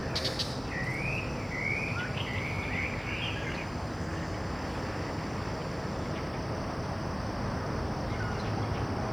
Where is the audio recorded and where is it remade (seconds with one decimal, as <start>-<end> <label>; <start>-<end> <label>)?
0.0-9.1 recorded